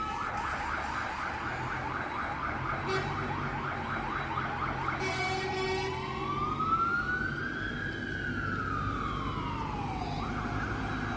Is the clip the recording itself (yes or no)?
yes